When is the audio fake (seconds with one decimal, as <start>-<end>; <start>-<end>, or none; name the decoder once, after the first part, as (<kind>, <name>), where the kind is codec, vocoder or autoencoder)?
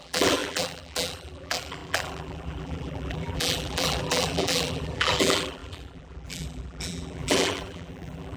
0.0-8.4 (vocoder, BigVGAN v2)